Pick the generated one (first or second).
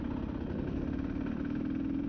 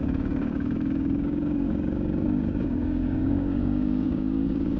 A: second